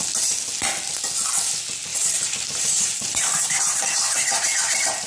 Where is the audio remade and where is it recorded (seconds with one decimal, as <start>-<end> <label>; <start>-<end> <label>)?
0.0-1.9 recorded; 1.9-5.1 remade